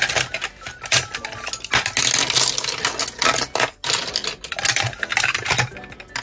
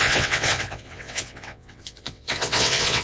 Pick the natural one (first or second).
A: first